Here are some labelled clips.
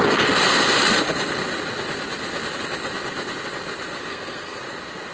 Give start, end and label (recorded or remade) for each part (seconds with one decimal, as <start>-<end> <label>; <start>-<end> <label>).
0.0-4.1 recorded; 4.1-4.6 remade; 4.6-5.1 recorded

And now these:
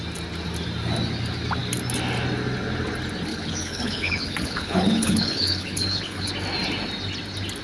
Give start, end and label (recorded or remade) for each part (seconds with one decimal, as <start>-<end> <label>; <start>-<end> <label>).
0.0-3.3 recorded; 3.3-6.3 remade; 6.3-7.6 recorded

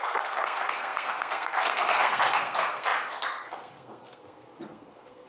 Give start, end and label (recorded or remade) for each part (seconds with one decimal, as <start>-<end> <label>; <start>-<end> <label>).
0.0-5.3 remade

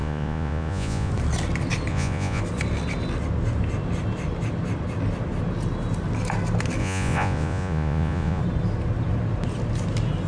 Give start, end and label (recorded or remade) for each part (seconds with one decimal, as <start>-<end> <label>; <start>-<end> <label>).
0.0-1.1 remade; 1.1-1.9 recorded; 1.9-2.4 remade; 2.4-6.8 recorded; 6.8-8.4 remade; 8.4-10.3 recorded

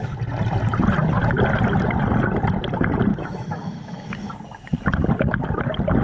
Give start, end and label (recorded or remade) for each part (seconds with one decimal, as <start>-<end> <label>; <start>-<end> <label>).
0.0-3.1 recorded; 3.1-4.1 remade; 4.1-6.0 recorded